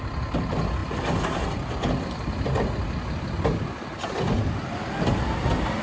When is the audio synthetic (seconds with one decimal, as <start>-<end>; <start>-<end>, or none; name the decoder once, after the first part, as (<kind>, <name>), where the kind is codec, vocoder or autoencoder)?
none